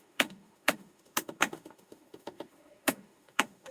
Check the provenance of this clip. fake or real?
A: fake